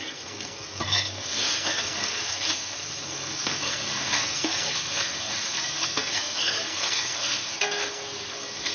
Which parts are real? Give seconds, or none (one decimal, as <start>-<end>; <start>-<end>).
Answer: none